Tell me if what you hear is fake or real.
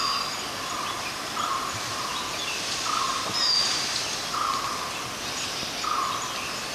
real